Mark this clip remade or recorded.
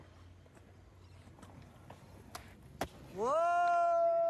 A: recorded